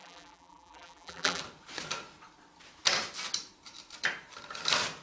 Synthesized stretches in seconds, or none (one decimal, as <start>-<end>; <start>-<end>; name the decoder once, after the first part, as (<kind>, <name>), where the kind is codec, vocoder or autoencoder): 0.0-1.4 (vocoder, BigVGAN v2)